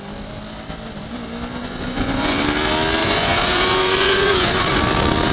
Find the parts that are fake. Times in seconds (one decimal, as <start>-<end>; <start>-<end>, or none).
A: 1.6-2.4; 3.0-4.8